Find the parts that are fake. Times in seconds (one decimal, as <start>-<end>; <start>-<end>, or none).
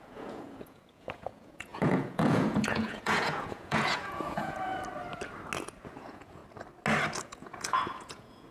0.0-4.7; 6.0-6.4; 7.2-8.5